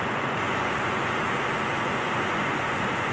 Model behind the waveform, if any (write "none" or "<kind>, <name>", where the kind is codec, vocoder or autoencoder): vocoder, Vocos